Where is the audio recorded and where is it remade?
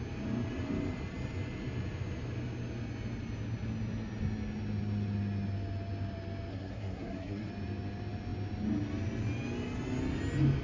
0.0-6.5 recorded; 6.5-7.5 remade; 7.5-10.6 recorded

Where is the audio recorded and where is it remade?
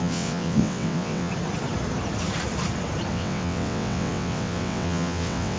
0.0-1.3 remade; 1.3-3.1 recorded; 3.1-5.6 remade